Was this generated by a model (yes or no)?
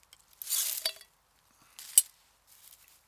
no